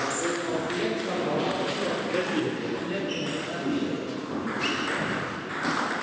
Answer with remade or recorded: recorded